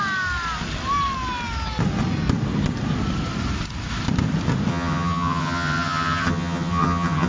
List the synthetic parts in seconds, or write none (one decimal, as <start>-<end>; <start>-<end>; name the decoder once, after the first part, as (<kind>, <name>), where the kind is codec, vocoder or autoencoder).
4.7-7.3 (vocoder, HiFi-GAN)